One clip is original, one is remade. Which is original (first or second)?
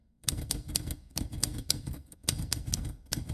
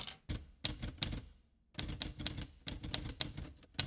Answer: second